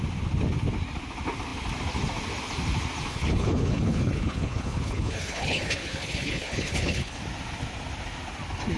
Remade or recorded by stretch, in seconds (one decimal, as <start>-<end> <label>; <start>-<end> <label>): 0.0-3.1 recorded; 3.1-7.2 remade; 7.2-8.8 recorded